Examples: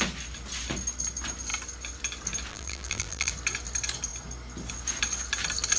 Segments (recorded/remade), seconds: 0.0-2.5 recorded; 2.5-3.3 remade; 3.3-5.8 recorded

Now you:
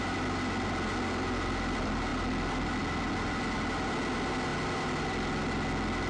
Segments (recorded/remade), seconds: 0.0-6.1 recorded

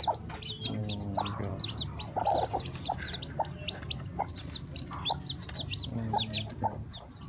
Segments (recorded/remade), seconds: 0.0-7.3 recorded

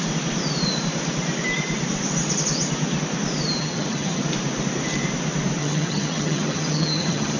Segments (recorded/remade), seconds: 0.0-3.6 recorded; 3.6-4.2 remade; 4.2-5.6 recorded; 5.6-7.4 remade